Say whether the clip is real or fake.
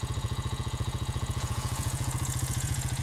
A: fake